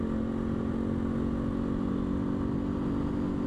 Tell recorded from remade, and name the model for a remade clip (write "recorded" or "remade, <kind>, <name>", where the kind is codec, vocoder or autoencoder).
recorded